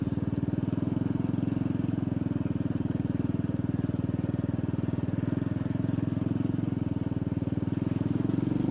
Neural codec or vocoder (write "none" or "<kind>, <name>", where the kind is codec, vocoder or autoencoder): none